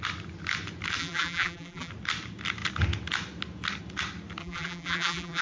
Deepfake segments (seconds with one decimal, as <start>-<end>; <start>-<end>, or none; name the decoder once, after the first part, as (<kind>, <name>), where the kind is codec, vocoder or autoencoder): 1.0-1.9 (vocoder, BigVGAN v2); 4.4-5.4